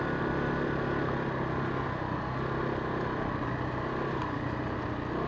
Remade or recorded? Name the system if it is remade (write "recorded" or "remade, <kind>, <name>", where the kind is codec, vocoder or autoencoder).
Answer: recorded